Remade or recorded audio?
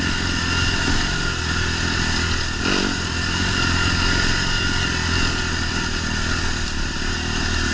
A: recorded